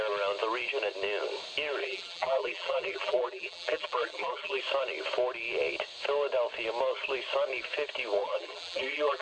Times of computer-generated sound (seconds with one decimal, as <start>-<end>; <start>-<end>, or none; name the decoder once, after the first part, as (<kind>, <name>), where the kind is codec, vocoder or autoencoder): 1.8-4.6 (vocoder, BigVGAN v2); 8.2-9.2